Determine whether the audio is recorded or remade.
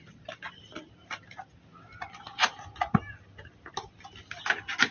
recorded